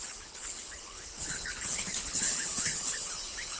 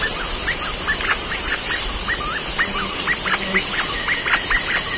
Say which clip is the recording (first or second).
second